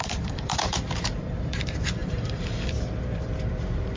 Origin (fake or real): fake